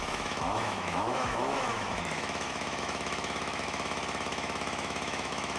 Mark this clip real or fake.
fake